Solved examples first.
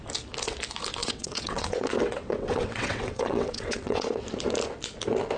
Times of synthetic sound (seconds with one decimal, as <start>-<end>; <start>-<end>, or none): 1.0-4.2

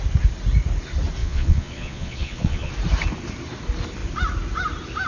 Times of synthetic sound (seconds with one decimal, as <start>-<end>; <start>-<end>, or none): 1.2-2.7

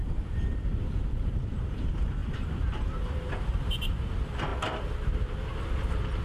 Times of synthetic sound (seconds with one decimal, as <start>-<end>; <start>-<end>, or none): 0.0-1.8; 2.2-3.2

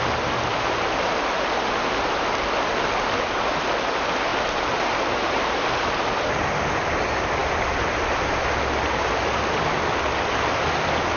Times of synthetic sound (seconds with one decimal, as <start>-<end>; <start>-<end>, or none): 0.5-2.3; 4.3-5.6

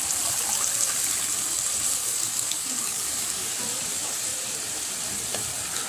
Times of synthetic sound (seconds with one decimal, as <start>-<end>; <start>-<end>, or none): 2.0-3.5